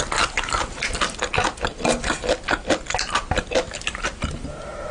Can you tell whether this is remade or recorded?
recorded